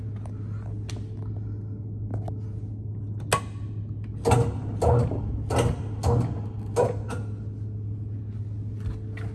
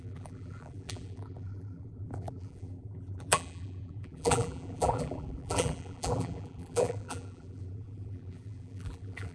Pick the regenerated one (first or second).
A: second